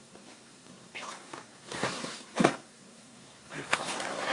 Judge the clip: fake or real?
fake